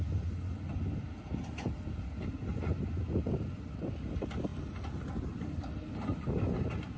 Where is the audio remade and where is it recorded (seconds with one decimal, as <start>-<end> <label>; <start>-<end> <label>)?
0.0-7.0 recorded